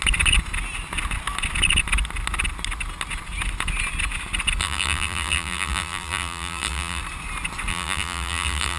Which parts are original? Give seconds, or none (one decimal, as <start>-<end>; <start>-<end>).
0.0-4.6; 7.0-7.7

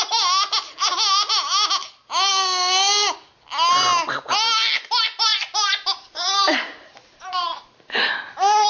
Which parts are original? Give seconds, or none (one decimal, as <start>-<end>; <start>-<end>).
0.0-5.3; 8.1-8.7

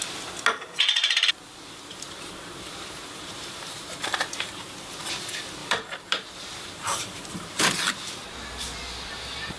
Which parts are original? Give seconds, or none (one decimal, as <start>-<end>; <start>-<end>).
0.0-1.9; 5.0-5.6; 7.6-9.6

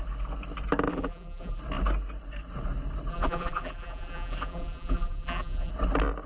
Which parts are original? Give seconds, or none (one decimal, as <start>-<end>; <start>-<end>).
0.0-0.9; 1.6-3.1; 5.7-6.3